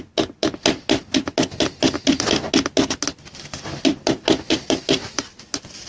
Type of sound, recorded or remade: recorded